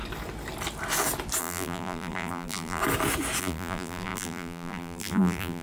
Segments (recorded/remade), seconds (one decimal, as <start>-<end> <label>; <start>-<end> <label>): 0.0-1.4 recorded; 1.4-2.8 remade; 2.8-3.4 recorded; 3.4-5.6 remade